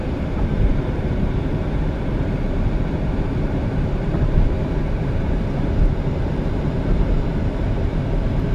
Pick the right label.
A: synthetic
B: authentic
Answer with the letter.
A